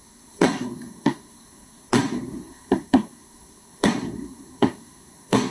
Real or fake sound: fake